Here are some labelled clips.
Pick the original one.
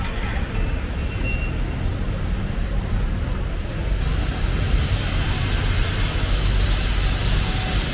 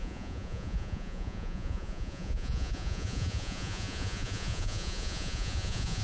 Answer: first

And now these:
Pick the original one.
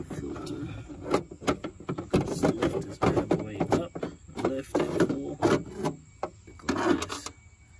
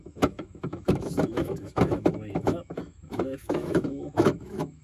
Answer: first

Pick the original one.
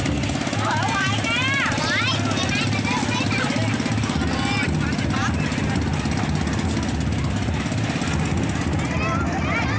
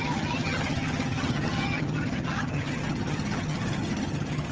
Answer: first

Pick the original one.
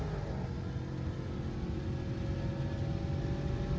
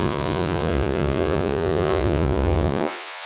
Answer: first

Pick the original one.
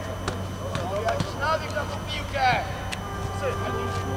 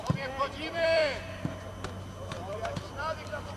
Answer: first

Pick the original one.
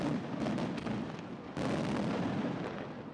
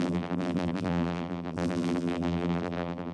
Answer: first